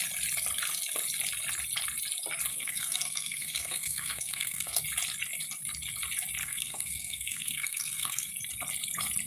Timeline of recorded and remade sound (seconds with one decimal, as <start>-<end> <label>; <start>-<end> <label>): 0.0-2.5 recorded; 2.5-4.8 remade; 4.8-6.4 recorded; 6.4-8.3 remade; 8.3-9.3 recorded